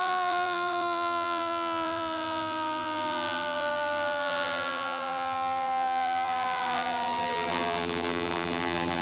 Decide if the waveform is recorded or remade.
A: remade